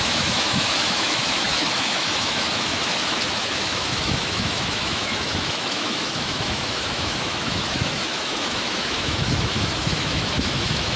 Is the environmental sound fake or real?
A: fake